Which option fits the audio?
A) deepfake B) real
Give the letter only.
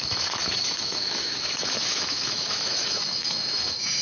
A